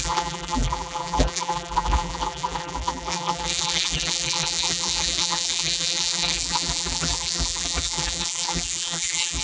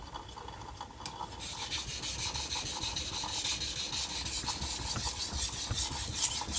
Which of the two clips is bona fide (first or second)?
second